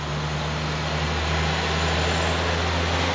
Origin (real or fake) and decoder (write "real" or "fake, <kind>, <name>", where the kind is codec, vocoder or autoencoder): real